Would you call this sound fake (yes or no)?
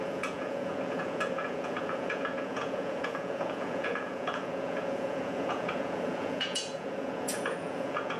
yes